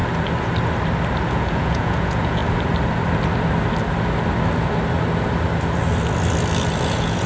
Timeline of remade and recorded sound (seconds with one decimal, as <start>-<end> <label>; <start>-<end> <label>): 0.0-1.3 recorded; 1.3-2.4 remade; 2.4-6.8 recorded; 6.8-7.3 remade